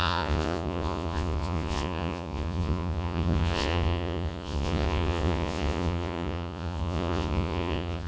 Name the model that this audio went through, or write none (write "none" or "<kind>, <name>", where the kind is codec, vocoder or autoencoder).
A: vocoder, Vocos